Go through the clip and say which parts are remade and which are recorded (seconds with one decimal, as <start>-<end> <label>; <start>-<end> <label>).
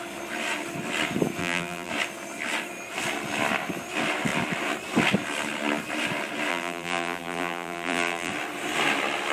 0.0-1.4 recorded; 1.4-1.9 remade; 1.9-6.5 recorded; 6.5-8.3 remade; 8.3-9.3 recorded